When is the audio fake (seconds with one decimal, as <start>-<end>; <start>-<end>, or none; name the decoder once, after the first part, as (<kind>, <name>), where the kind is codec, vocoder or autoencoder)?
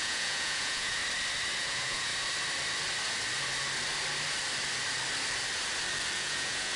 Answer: 0.0-1.0 (vocoder, Vocos); 1.6-2.1; 6.2-6.8